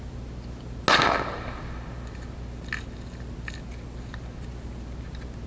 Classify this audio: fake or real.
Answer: real